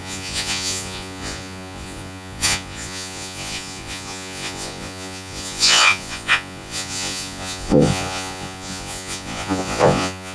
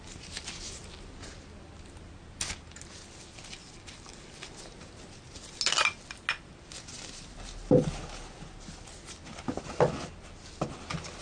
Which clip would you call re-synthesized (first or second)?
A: first